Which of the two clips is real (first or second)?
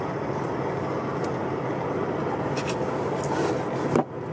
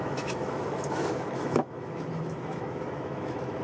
first